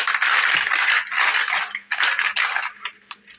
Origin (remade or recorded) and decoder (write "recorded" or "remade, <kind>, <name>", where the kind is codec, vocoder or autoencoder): recorded